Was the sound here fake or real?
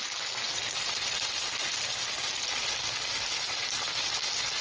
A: real